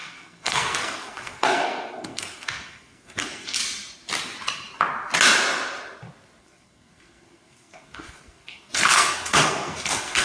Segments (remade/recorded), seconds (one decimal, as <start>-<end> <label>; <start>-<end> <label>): 0.0-3.6 remade; 3.6-6.4 recorded; 6.4-10.2 remade

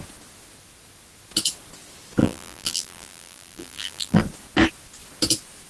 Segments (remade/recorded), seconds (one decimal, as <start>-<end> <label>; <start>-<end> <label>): 0.0-2.2 recorded; 2.2-4.2 remade; 4.2-5.7 recorded

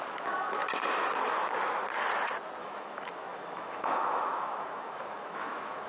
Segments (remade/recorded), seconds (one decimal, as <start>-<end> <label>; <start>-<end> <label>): 0.0-0.6 remade; 0.6-2.6 recorded; 2.6-5.9 remade

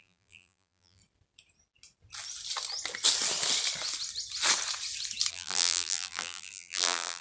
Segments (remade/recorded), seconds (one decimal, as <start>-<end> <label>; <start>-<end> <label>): 0.0-1.0 remade; 1.0-5.3 recorded; 5.3-7.2 remade